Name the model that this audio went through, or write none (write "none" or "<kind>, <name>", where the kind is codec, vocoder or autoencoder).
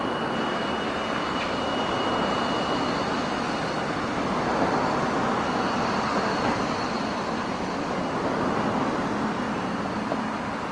none